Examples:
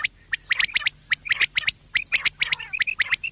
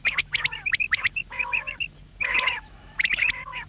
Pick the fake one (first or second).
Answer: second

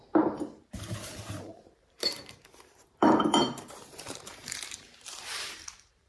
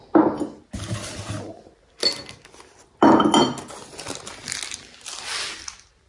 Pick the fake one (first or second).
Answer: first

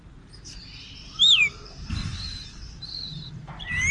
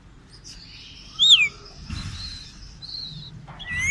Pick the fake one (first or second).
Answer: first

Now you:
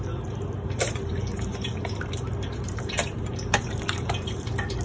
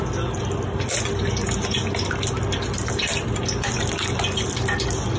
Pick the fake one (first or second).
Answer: first